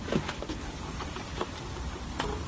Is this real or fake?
fake